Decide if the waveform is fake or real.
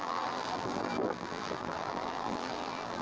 fake